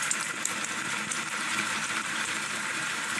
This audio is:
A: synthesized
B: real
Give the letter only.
A